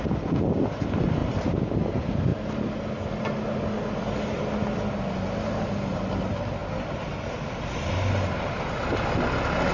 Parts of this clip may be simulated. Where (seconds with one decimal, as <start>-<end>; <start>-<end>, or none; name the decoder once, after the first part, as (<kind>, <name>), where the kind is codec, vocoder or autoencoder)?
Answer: none